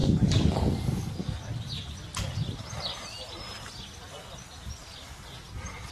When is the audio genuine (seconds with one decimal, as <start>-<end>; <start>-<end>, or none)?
1.5-5.9